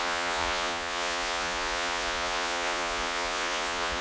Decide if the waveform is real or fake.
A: fake